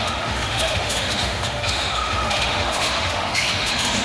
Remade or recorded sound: remade